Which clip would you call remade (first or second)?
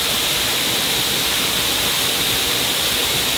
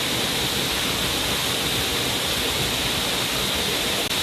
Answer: first